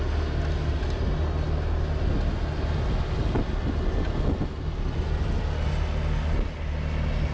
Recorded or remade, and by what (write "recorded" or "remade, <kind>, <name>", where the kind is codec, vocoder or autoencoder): recorded